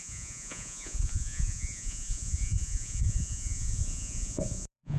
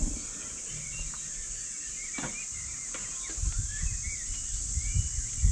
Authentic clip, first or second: second